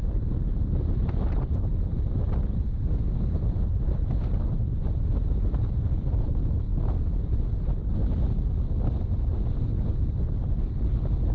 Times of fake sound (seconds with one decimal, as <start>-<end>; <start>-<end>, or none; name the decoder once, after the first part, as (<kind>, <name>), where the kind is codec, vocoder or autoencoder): none